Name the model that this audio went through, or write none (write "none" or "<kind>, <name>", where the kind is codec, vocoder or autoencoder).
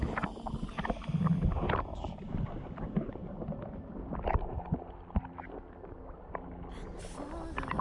none